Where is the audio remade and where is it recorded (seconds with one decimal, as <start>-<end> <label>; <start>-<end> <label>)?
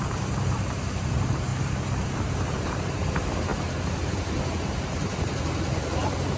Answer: 0.0-1.5 remade; 1.5-2.1 recorded; 2.1-6.4 remade